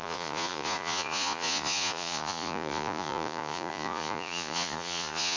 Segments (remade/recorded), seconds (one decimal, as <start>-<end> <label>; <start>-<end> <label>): 0.0-5.4 remade